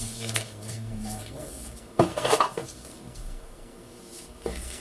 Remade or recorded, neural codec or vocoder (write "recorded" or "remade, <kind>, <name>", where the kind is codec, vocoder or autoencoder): remade, codec, SNAC